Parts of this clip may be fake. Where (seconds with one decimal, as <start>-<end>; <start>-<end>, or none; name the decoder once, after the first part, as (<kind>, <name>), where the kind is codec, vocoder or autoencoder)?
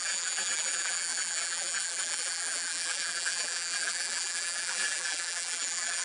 0.0-6.0 (vocoder, BigVGAN v2)